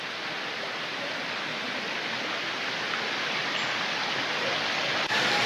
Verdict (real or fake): real